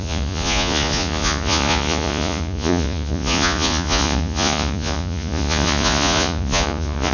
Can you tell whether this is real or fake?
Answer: fake